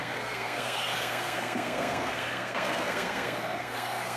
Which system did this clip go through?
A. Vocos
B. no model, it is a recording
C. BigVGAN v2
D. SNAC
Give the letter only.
D